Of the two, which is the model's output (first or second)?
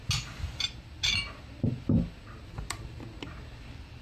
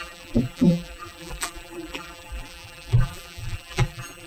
second